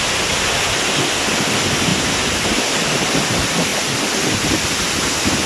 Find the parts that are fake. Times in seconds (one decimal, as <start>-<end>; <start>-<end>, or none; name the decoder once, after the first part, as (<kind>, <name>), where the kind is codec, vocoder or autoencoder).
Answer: 1.9-3.1 (vocoder, BigVGAN v2)

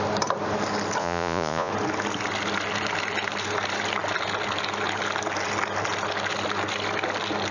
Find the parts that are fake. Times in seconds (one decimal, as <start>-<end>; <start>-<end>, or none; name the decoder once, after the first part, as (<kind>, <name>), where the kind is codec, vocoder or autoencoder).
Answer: 1.0-1.7 (vocoder, Vocos)

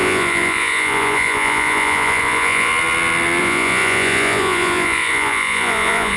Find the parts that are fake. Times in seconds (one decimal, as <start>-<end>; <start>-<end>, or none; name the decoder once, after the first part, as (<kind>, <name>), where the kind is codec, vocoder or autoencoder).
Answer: 0.0-2.7 (vocoder, Vocos); 3.4-6.2

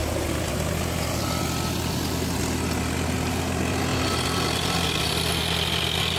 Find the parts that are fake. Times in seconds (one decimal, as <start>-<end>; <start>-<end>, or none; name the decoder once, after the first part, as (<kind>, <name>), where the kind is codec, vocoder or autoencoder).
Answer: 3.9-5.0 (vocoder, BigVGAN v2)

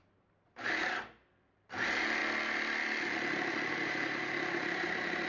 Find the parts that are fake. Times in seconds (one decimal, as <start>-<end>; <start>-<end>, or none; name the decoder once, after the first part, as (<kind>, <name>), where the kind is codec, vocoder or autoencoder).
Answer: 0.0-2.2 (vocoder, BigVGAN v2); 3.7-5.3

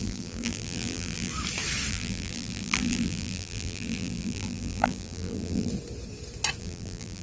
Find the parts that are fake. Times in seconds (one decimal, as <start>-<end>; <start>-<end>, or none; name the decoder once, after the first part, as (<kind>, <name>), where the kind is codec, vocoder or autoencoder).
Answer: 0.0-1.3 (vocoder, BigVGAN v2); 1.9-5.7; 6.6-7.2